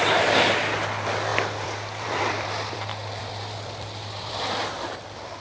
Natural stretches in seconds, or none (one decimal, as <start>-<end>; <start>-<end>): 0.0-1.3; 4.5-5.4